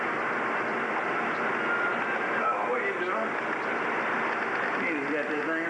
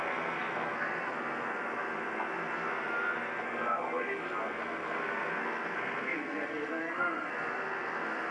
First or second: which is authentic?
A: first